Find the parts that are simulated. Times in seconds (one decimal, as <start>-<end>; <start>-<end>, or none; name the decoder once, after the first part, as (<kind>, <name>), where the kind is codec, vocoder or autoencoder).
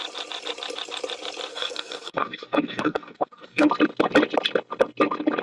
1.5-3.7 (codec, SNAC)